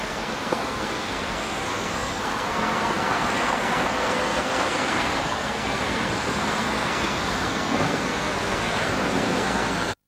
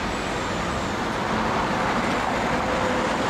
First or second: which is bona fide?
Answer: second